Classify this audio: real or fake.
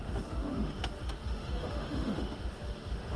fake